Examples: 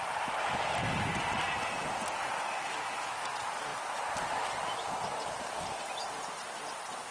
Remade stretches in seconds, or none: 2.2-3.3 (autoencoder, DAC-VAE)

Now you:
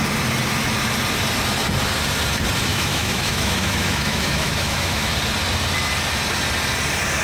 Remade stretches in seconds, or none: 2.7-5.1 (autoencoder, DAC-VAE)

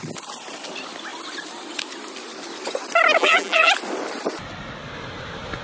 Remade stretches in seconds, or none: 3.2-3.7 (vocoder, BigVGAN v2)

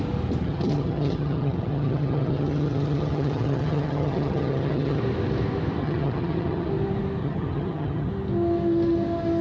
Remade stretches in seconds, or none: 0.4-5.0 (vocoder, HiFi-GAN); 5.8-6.7; 7.2-8.1

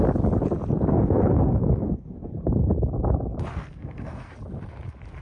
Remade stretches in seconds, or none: 0.9-2.3 (codec, SNAC); 3.5-4.3

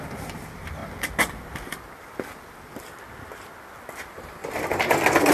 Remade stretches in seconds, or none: 0.0-5.3 (vocoder, BigVGAN v2)

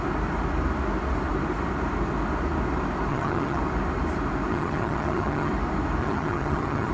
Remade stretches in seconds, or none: 3.1-3.6 (vocoder, HiFi-GAN); 4.5-5.5; 6.0-6.9